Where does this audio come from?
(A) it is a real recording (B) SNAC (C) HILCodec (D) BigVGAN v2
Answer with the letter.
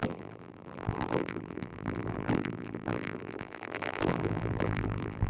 D